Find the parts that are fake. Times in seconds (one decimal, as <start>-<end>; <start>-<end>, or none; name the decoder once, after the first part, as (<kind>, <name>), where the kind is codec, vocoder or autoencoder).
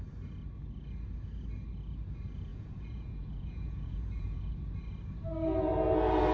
2.5-4.5 (vocoder, Vocos)